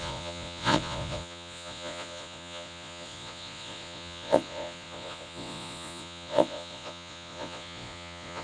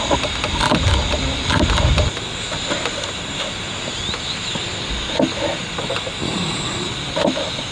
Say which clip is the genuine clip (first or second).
second